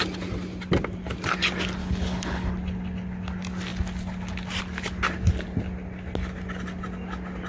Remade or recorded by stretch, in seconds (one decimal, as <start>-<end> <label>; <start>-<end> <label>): 0.0-1.8 recorded; 1.8-2.5 remade; 2.5-7.5 recorded